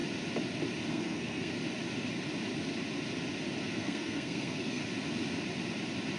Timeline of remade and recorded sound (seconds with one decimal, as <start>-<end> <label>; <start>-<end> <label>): 0.0-0.9 recorded; 0.9-1.6 remade; 1.6-3.6 recorded; 3.6-4.8 remade; 4.8-6.2 recorded